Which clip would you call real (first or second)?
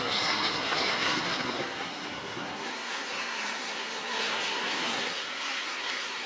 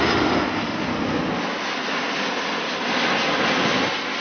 second